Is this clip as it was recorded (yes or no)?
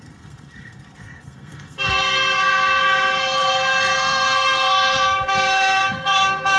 no